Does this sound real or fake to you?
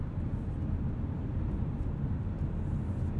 real